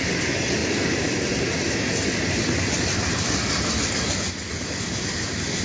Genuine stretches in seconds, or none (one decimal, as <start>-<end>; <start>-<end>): 0.0-5.6